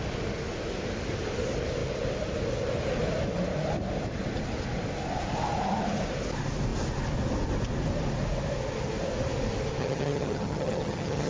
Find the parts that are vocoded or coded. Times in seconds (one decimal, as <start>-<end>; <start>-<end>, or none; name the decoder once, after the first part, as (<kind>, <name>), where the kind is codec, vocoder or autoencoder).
9.8-11.3 (vocoder, HiFi-GAN)